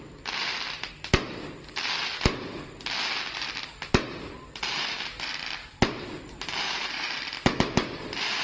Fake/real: real